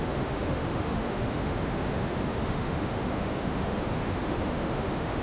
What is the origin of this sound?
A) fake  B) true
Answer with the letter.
A